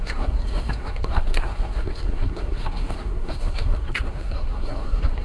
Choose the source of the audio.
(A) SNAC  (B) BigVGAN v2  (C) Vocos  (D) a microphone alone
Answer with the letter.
A